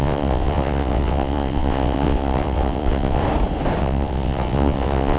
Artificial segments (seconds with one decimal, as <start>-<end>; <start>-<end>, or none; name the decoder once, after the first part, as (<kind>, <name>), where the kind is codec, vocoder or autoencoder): 0.0-3.2 (vocoder, WaveNeXt); 3.8-5.2